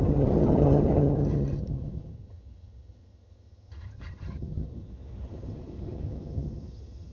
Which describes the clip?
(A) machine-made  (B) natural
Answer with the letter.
A